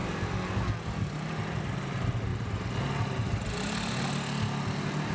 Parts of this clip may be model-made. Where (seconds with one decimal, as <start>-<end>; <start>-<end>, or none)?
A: none